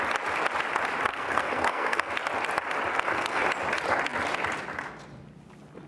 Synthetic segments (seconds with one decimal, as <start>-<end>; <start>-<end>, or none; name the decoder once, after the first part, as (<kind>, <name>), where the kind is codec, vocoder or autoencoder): 1.1-2.1 (codec, SNAC); 2.9-3.4